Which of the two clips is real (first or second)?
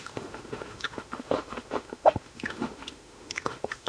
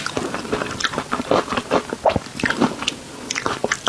second